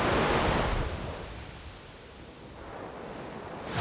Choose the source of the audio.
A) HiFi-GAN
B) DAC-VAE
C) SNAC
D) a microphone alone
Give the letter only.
D